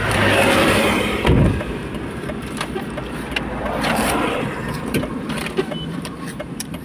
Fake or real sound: fake